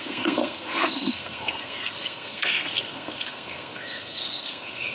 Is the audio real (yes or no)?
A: no